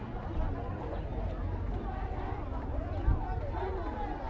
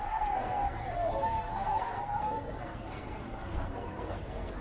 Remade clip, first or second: second